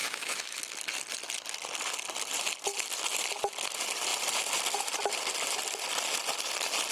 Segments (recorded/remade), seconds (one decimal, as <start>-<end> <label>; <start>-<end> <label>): 0.0-0.6 remade; 0.6-6.9 recorded